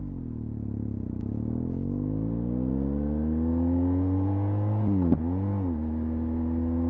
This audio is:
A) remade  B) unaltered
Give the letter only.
B